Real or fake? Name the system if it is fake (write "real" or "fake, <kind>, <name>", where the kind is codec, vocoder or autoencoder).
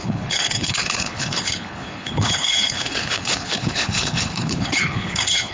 fake, codec, HILCodec